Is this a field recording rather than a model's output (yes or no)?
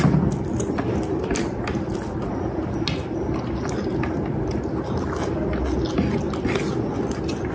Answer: yes